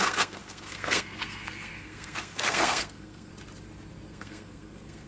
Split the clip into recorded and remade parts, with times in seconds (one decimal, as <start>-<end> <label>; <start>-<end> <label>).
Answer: 0.0-3.3 remade; 3.3-4.1 recorded; 4.1-5.1 remade